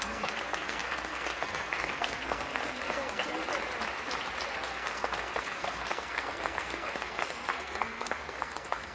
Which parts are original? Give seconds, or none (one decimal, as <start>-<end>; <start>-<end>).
3.5-4.7